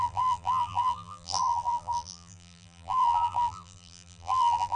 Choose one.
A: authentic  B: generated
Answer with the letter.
B